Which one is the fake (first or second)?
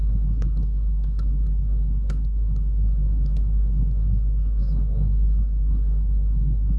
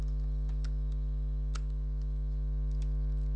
first